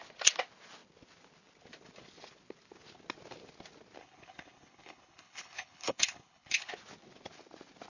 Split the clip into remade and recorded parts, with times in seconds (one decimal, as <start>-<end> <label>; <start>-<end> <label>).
0.0-4.0 recorded; 4.0-6.7 remade; 6.7-7.9 recorded